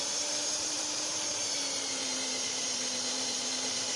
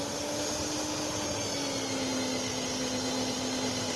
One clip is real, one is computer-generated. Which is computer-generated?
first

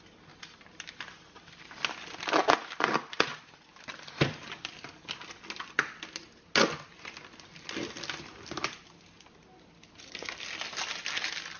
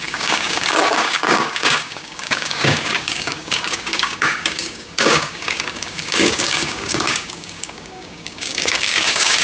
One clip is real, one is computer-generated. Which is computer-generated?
second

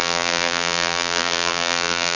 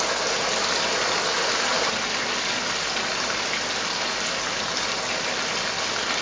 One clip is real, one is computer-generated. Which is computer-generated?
first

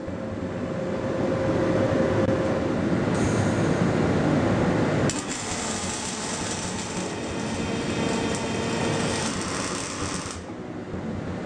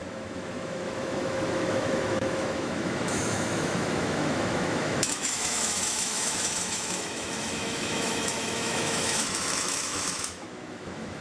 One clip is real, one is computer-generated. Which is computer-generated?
second